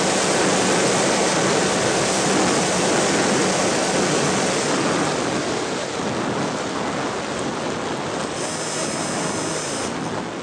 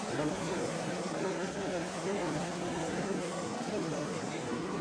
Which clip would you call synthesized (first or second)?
second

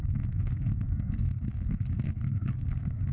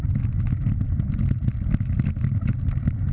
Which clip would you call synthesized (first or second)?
first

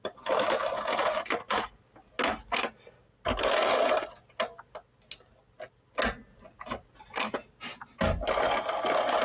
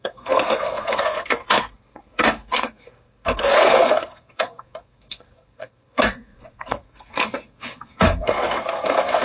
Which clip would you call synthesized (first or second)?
second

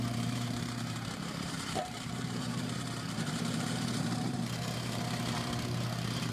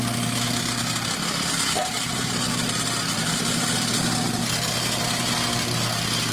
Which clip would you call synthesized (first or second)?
first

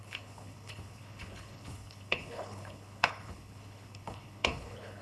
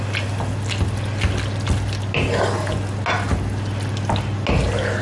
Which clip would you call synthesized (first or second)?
first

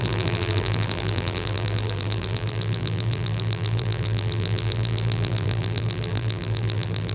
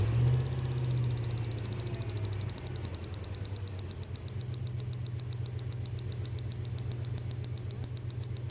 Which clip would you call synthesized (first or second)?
first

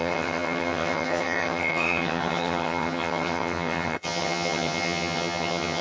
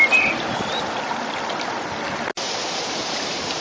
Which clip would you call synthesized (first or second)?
first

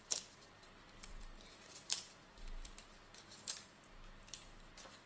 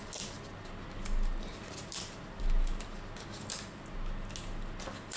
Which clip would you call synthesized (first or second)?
first